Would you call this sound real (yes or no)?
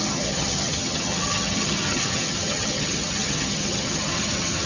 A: no